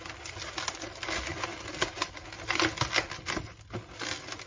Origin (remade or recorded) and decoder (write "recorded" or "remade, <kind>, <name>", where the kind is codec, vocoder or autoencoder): recorded